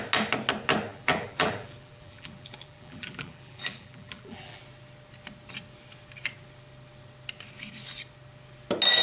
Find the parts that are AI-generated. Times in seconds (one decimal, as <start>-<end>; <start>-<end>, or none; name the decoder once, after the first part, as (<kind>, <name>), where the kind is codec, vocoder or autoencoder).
0.9-4.6 (vocoder, BigVGAN v2)